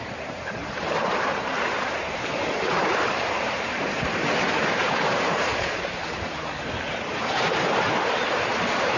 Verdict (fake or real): fake